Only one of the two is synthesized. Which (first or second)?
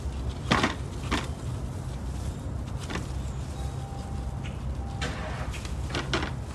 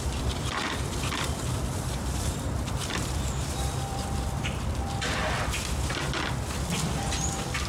second